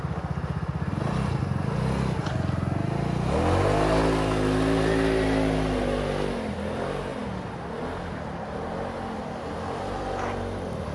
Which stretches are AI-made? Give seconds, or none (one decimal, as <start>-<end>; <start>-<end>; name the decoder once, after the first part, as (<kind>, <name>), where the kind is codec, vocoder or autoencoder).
none